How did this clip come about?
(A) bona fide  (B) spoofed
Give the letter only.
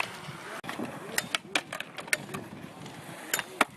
A